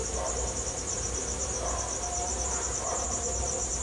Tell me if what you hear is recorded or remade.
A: remade